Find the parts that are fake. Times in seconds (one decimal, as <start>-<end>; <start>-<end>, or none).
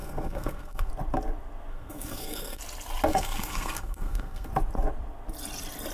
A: 0.0-0.9; 1.7-2.6; 3.1-4.5